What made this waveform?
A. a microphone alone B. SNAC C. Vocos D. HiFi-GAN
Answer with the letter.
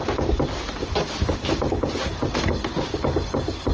A